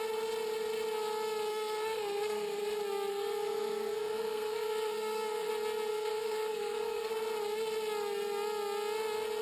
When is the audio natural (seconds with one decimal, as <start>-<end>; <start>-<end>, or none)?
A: 0.0-1.5; 2.6-3.1; 5.5-5.9; 7.1-9.4